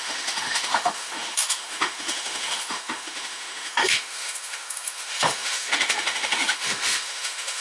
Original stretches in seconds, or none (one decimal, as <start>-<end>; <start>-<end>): none

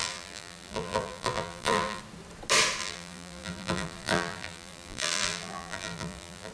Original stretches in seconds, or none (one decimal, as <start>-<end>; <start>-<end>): 2.0-2.8

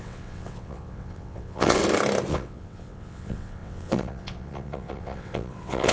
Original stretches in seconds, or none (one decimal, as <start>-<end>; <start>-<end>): 1.8-2.3

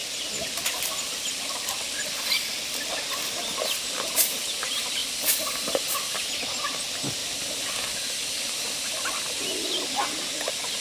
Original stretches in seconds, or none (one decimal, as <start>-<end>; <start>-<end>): 0.0-5.0; 6.4-10.8